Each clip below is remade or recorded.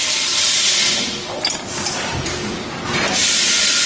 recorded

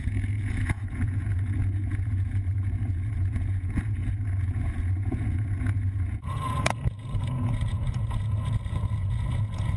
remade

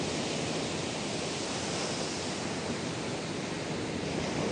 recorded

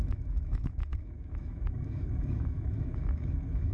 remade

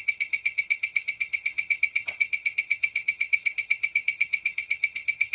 remade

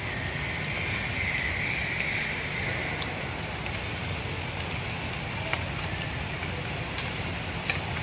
recorded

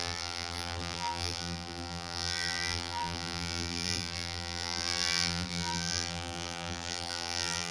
remade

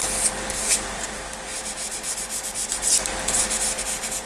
recorded